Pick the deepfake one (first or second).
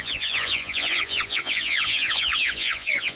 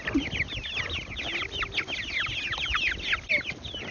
first